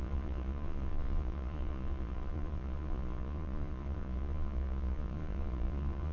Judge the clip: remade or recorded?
remade